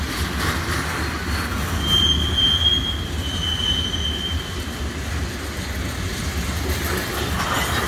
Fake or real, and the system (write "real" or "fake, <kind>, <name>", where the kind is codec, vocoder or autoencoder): real